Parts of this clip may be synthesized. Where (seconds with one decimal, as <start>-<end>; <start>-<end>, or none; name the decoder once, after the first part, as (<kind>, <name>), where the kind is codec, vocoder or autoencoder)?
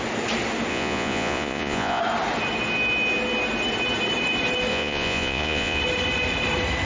0.7-2.0 (vocoder, Vocos); 4.7-5.8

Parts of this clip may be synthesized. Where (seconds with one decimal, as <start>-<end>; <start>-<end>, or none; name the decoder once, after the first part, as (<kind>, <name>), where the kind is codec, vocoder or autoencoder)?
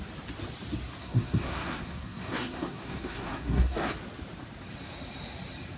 1.0-3.9 (codec, SNAC)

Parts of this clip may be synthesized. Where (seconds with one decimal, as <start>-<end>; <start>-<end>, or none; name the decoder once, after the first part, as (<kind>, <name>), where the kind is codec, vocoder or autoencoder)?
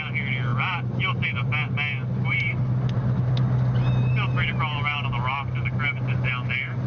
none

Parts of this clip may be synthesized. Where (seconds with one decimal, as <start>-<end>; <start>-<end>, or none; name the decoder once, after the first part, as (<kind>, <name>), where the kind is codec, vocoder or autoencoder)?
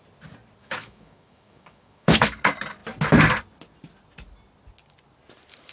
0.6-2.4 (autoencoder, DAC-VAE)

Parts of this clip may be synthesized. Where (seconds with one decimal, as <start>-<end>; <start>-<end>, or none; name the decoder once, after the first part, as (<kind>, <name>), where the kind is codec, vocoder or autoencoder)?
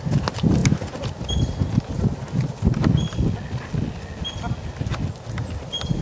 none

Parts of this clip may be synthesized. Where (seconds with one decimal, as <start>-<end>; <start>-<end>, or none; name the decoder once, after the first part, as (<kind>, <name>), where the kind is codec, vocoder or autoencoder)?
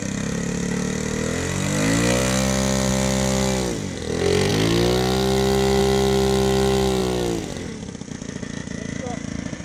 8.6-9.6 (vocoder, BigVGAN v2)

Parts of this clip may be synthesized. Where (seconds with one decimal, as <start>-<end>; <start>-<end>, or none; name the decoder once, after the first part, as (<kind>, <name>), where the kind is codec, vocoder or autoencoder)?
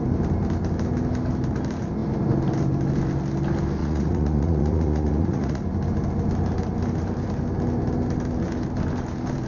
3.8-5.6 (vocoder, Vocos)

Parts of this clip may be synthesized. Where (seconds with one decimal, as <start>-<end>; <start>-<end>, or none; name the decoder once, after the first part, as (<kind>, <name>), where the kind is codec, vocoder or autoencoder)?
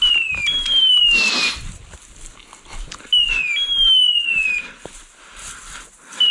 0.4-0.9 (vocoder, BigVGAN v2)